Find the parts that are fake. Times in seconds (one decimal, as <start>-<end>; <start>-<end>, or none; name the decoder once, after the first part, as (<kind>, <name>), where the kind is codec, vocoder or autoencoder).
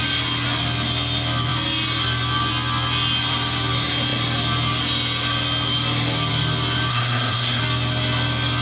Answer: 6.9-7.6 (codec, SNAC)